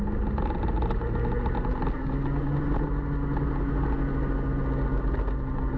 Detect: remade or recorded recorded